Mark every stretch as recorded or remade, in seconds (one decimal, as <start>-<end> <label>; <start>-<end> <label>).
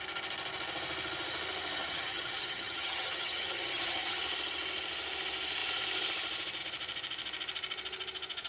0.0-1.8 recorded; 1.8-4.2 remade; 4.2-8.5 recorded